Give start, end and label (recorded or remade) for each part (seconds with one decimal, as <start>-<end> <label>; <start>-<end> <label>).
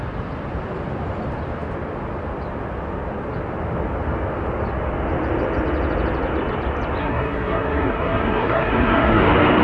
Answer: 0.0-7.0 recorded; 7.0-9.2 remade; 9.2-9.6 recorded